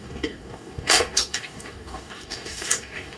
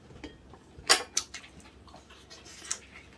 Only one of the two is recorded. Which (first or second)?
second